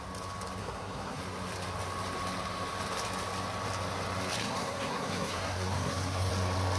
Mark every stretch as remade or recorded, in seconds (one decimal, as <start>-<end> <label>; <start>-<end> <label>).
0.0-0.6 recorded; 0.6-1.2 remade; 1.2-4.4 recorded; 4.4-6.3 remade; 6.3-6.8 recorded